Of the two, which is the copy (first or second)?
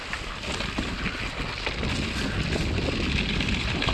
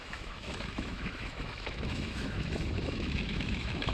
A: second